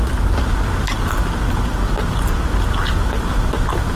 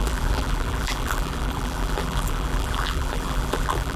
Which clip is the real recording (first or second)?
first